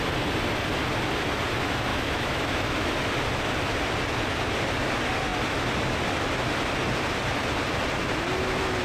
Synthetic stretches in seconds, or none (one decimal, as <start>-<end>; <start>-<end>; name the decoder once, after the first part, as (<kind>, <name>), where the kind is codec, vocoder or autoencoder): 1.9-2.9 (autoencoder, DAC-VAE)